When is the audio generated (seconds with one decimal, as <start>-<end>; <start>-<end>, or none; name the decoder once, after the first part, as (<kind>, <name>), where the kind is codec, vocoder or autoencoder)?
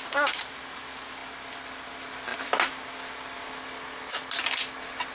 none